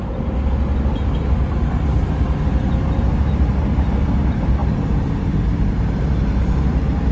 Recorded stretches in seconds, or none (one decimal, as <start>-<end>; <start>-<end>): 0.0-3.2